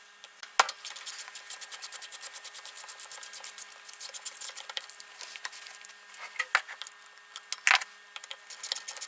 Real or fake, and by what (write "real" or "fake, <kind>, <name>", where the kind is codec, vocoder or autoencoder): real